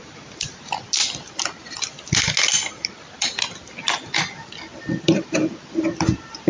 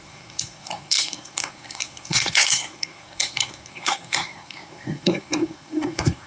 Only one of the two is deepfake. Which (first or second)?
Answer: second